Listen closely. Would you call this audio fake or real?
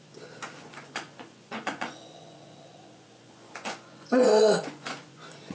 fake